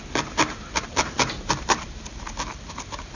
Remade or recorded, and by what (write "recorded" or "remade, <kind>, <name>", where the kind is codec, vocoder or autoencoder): recorded